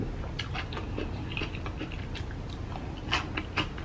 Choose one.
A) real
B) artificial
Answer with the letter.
A